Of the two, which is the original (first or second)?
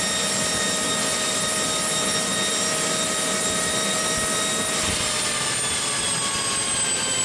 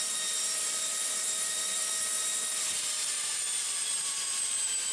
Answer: first